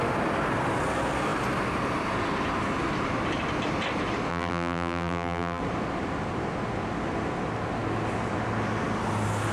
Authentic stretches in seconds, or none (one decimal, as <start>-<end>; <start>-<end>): 0.0-4.3; 5.6-9.5